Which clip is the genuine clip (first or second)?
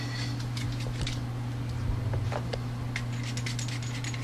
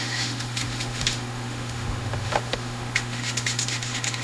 first